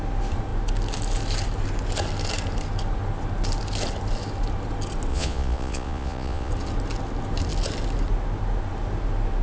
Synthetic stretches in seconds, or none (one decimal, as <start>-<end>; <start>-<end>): 5.1-6.5